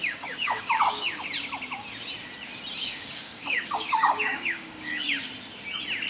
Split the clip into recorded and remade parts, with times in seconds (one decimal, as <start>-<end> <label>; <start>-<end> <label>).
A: 0.0-1.1 remade; 1.1-2.8 recorded; 2.8-5.3 remade; 5.3-6.1 recorded